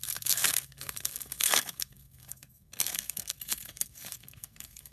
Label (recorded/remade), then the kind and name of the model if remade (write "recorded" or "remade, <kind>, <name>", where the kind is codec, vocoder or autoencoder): remade, codec, SNAC